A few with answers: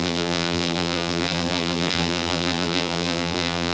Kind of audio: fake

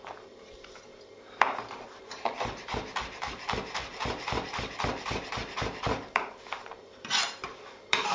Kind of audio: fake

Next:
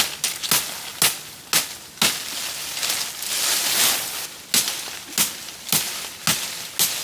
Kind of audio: real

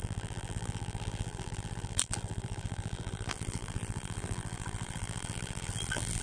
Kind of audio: fake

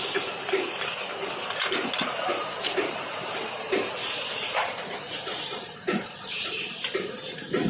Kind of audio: fake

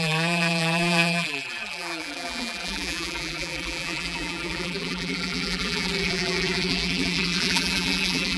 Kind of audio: fake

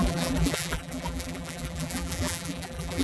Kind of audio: fake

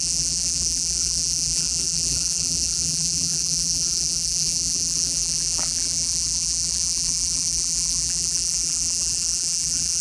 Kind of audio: fake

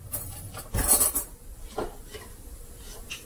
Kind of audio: real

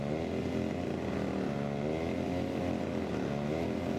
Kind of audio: real